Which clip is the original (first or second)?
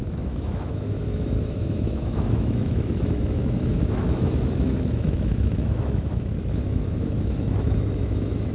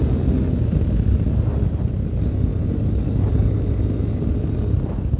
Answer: second